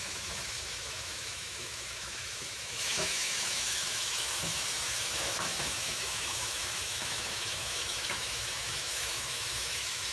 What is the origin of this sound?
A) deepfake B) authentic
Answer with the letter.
A